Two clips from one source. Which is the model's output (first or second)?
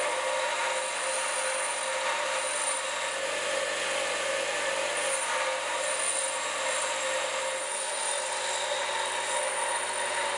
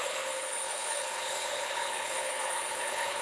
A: second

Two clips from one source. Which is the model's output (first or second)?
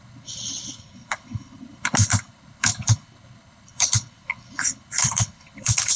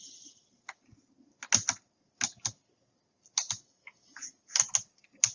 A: first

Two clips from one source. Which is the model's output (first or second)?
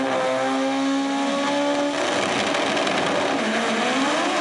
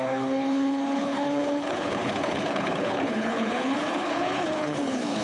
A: second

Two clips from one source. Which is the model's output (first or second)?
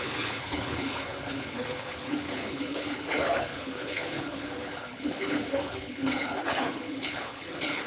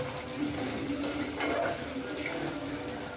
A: first